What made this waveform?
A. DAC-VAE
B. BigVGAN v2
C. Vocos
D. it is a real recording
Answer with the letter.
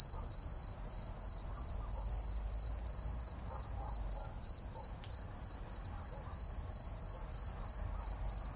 D